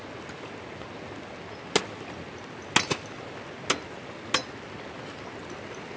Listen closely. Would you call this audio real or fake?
real